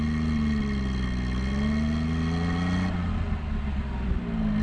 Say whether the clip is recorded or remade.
recorded